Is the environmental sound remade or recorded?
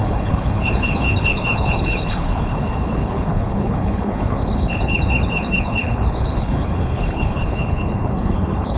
remade